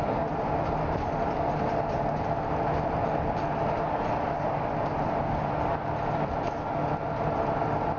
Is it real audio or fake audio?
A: real